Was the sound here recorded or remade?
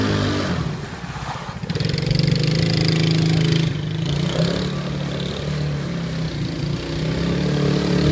recorded